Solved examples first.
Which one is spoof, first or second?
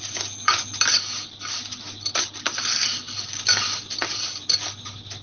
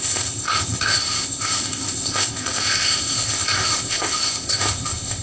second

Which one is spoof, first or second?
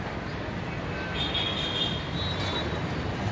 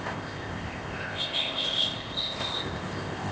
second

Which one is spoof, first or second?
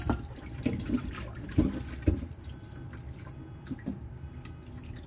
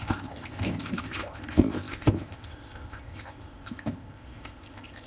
second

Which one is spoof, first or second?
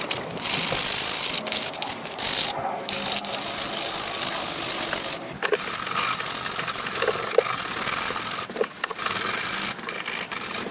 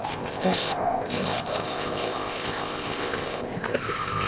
second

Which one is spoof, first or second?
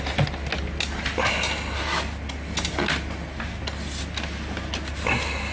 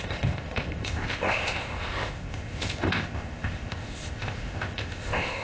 second